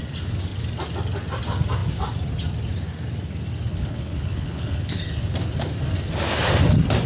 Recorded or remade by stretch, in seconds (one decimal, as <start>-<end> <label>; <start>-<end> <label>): 0.0-3.7 recorded; 3.7-5.0 remade; 5.0-7.1 recorded